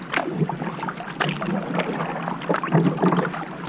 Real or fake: real